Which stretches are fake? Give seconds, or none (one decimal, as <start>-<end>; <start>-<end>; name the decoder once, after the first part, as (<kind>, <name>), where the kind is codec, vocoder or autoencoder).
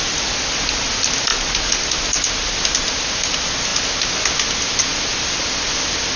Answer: none